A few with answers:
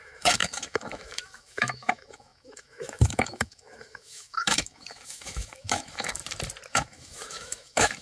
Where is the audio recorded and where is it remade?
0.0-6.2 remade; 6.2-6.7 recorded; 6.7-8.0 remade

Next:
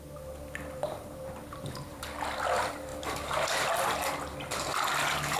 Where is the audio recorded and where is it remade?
0.0-0.8 recorded; 0.8-2.0 remade; 2.0-5.4 recorded

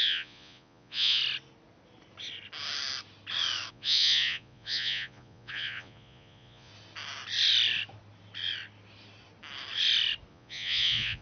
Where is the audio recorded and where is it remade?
0.0-1.2 remade; 1.2-3.7 recorded; 3.7-6.7 remade; 6.7-10.3 recorded; 10.3-11.2 remade

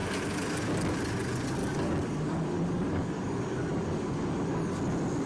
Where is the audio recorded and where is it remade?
0.0-1.6 recorded; 1.6-4.8 remade; 4.8-5.3 recorded

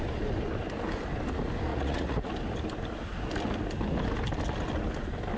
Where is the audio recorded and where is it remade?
0.0-1.7 recorded; 1.7-2.3 remade; 2.3-5.4 recorded